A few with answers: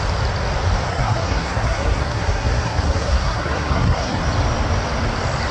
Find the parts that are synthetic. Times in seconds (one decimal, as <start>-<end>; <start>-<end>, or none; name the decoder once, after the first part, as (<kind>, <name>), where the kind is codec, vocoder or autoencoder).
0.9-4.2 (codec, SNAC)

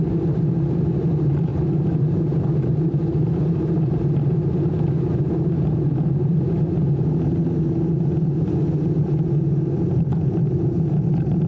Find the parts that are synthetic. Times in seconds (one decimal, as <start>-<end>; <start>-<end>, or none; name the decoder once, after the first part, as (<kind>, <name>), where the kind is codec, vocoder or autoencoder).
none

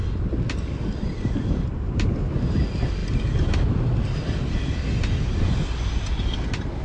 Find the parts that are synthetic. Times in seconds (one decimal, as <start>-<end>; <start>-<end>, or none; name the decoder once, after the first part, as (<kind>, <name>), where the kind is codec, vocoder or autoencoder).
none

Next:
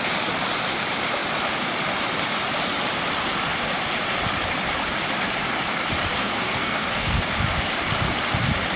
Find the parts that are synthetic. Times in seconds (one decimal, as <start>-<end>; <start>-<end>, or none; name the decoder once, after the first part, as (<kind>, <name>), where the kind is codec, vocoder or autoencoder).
6.2-7.2 (codec, SNAC)